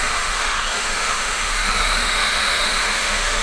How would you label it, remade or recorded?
remade